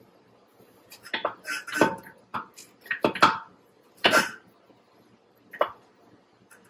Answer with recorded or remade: recorded